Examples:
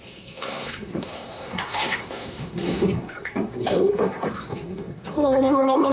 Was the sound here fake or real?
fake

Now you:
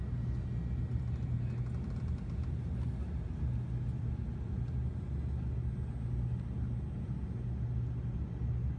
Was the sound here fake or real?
real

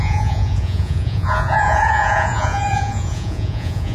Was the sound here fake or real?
fake